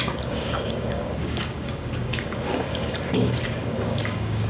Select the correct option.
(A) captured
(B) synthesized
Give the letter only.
B